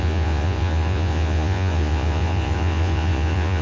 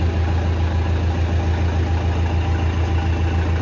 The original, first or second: second